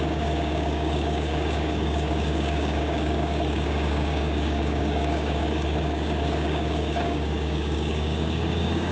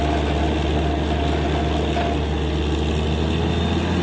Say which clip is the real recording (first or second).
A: second